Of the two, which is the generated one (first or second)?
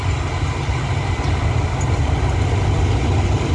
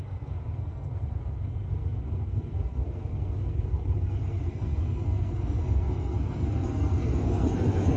second